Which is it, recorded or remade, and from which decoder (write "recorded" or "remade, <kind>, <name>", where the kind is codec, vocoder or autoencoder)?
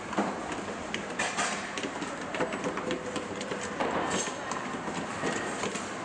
recorded